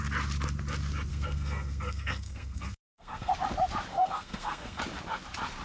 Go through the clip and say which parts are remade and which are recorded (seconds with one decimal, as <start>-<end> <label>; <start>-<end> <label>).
0.0-1.1 recorded; 1.1-3.3 remade; 3.3-3.9 recorded; 3.9-4.8 remade; 4.8-5.6 recorded